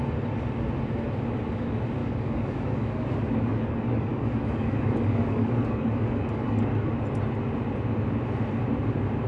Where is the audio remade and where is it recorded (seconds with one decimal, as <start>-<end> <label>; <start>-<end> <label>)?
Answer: 0.0-2.0 recorded; 2.0-3.1 remade; 3.1-3.5 recorded; 3.5-6.9 remade; 6.9-9.3 recorded